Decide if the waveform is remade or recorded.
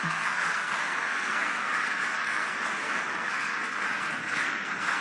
remade